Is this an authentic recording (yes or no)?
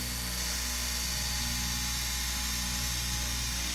yes